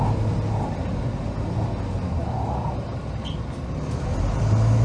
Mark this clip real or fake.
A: real